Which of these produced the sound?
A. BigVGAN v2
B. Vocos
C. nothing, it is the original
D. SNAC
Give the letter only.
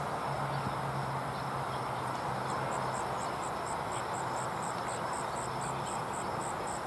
C